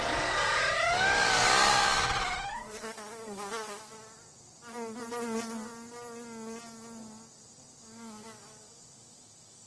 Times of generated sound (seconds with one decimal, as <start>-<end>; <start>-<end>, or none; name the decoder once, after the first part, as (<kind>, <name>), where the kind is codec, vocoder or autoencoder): 0.0-1.7 (codec, DAC); 2.5-3.9; 7.8-9.7

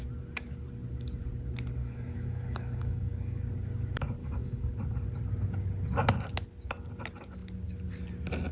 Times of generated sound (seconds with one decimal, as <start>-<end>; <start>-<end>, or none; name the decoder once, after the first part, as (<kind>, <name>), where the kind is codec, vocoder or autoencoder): 1.8-3.4 (codec, DAC); 4.2-4.7

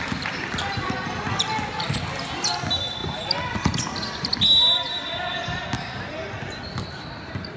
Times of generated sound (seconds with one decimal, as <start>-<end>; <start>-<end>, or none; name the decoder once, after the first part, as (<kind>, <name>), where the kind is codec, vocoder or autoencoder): none

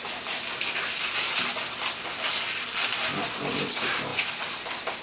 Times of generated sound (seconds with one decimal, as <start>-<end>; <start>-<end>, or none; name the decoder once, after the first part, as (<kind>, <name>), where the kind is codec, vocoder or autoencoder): none